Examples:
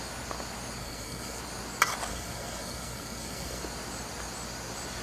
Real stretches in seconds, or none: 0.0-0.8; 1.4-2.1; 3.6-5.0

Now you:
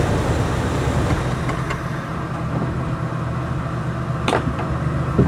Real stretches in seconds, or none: 0.0-5.3

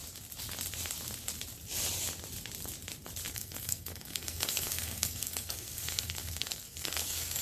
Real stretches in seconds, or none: 0.0-3.3

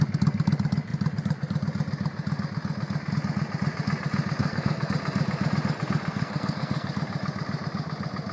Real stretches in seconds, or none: 0.0-4.4; 4.9-6.1; 6.9-8.3

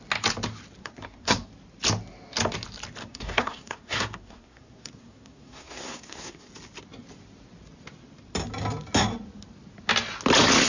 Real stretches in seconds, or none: 0.0-0.8; 1.5-3.0; 6.5-10.7